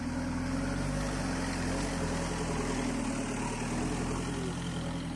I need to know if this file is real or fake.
real